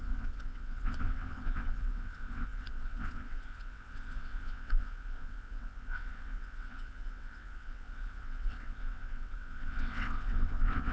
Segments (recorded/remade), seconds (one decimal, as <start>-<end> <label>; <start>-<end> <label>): 0.0-10.9 remade

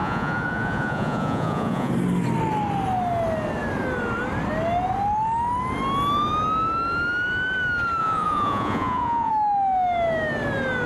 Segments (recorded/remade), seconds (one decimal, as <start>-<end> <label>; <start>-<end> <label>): 0.0-1.9 remade; 1.9-8.0 recorded; 8.0-9.3 remade; 9.3-10.9 recorded

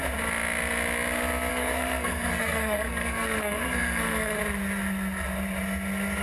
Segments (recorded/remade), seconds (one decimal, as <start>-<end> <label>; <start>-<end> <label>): 0.0-1.5 recorded; 1.5-4.4 remade; 4.4-6.2 recorded

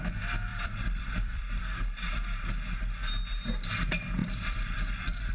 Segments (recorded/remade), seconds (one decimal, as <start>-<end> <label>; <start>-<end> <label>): 0.0-0.5 recorded; 0.5-1.6 remade; 1.6-4.2 recorded; 4.2-5.3 remade